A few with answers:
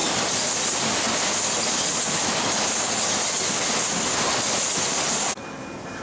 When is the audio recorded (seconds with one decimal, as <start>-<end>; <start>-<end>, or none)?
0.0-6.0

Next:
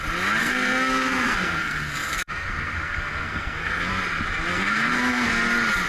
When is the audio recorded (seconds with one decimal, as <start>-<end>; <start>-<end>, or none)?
0.0-0.4; 3.9-4.5; 5.3-5.9

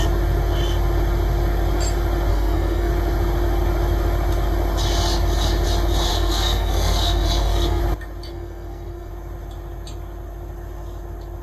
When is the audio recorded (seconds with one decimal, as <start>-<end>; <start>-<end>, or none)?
0.0-2.3; 2.9-6.1; 7.8-8.3; 9.1-11.4

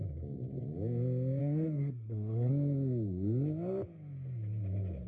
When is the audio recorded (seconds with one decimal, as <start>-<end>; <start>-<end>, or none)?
0.0-1.4; 2.5-5.1

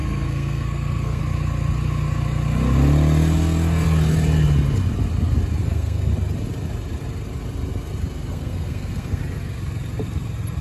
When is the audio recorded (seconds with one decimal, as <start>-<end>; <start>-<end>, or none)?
1.2-5.6; 6.1-8.3; 9.2-10.6

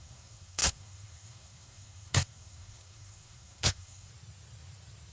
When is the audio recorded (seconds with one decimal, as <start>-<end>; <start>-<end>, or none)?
4.1-5.1

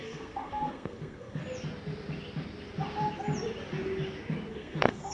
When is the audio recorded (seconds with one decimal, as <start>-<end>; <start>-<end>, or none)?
1.4-4.5

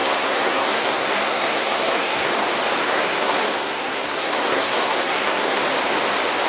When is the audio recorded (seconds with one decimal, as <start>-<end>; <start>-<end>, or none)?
2.3-2.8; 5.6-6.5